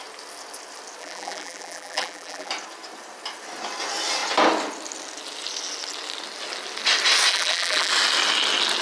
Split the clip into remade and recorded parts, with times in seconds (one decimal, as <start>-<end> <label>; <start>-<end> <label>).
0.0-1.0 recorded; 1.0-2.5 remade; 2.5-7.3 recorded; 7.3-7.9 remade; 7.9-8.8 recorded